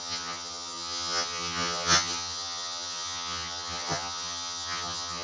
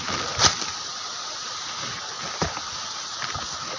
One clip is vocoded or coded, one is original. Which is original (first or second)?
second